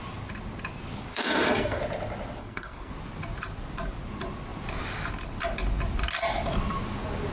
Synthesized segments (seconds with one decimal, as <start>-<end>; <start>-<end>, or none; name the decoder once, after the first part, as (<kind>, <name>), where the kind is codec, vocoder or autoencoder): 1.1-1.8 (codec, SNAC); 2.4-2.9